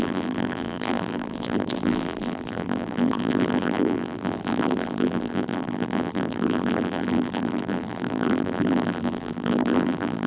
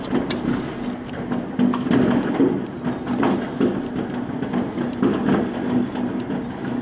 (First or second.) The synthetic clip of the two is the first